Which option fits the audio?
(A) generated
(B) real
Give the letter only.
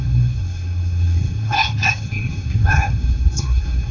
A